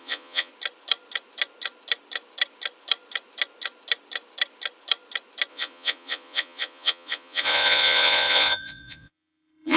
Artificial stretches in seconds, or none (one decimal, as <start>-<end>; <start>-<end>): 0.0-0.5; 5.5-9.8